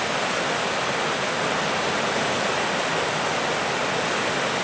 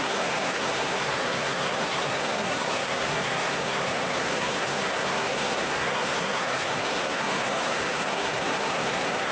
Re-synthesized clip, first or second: second